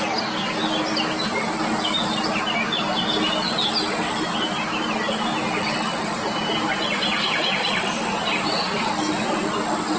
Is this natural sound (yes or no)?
yes